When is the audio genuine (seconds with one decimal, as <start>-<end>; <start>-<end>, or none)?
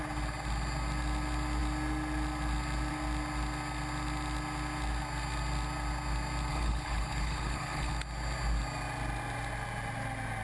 0.0-6.5; 7.9-10.4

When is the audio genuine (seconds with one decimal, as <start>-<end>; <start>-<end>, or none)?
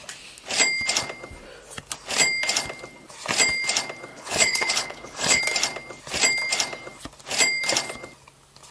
0.0-4.1; 5.4-8.7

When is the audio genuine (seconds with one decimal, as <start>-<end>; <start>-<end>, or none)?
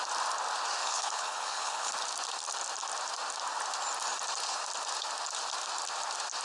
0.0-0.8; 1.9-6.4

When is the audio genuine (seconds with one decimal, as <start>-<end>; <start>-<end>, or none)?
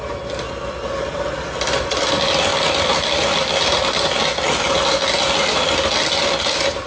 0.0-6.9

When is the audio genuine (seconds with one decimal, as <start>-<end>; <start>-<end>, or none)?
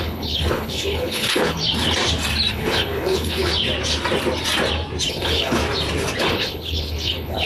1.6-2.5; 3.5-5.1; 5.6-6.2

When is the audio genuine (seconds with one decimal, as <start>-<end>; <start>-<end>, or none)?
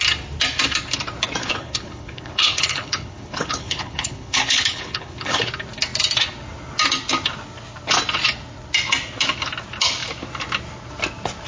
0.0-1.4; 5.5-11.5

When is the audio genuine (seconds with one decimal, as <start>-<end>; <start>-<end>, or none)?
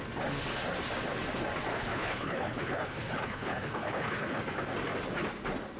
0.0-1.7; 4.4-5.8